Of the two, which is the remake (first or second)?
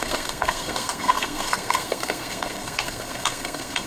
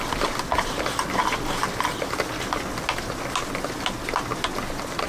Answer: first